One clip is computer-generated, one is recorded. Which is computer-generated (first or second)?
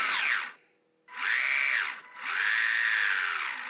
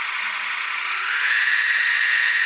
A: second